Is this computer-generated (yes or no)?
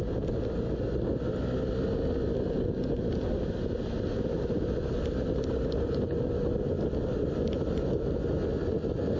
no